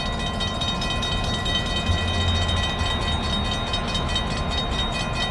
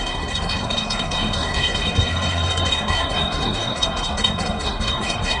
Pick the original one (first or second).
first